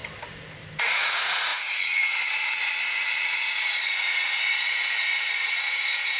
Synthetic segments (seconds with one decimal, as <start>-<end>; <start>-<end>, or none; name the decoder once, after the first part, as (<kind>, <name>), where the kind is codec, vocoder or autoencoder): 0.8-6.2 (vocoder, Vocos)